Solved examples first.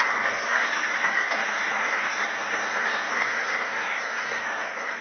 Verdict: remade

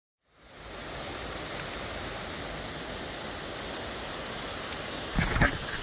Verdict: recorded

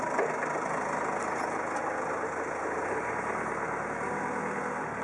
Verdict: recorded